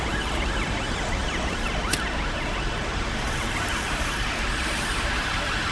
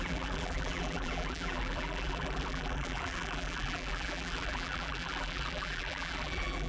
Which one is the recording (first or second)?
first